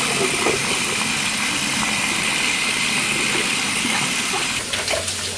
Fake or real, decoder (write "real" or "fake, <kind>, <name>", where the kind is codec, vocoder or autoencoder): real